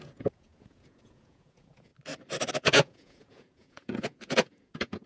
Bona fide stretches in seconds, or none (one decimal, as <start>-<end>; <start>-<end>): 1.9-2.5